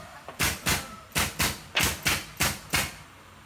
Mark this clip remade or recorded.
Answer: recorded